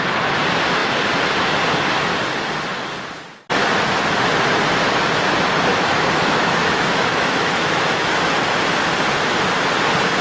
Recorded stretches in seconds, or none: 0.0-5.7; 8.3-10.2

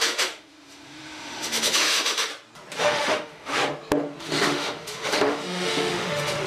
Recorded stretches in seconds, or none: 2.3-2.8; 3.6-4.2